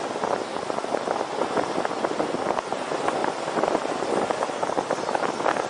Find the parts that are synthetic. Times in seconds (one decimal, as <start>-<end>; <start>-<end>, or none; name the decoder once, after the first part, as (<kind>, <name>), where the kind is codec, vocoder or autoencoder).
none